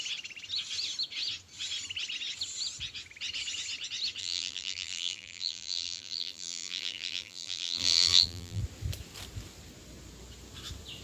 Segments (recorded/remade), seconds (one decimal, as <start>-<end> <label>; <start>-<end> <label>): 0.0-4.2 recorded; 4.2-8.6 remade; 8.6-11.0 recorded